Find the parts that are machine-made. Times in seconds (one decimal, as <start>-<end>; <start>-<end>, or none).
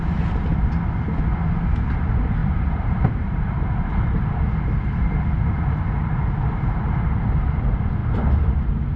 2.4-4.2; 8.0-8.5